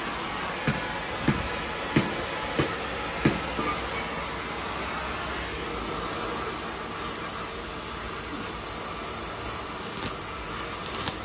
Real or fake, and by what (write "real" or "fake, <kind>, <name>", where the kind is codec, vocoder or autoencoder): real